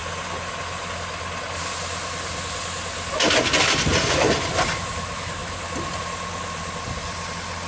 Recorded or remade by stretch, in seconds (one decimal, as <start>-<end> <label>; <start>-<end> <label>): 0.0-3.9 recorded; 3.9-4.5 remade; 4.5-7.7 recorded